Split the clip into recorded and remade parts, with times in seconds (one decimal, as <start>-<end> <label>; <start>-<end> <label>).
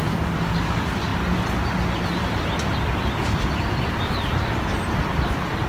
0.0-5.7 recorded